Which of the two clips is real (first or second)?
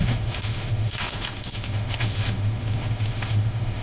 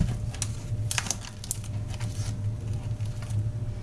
second